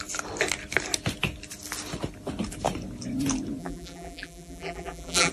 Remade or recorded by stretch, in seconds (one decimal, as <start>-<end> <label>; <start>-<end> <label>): 0.0-3.6 recorded; 3.6-5.3 remade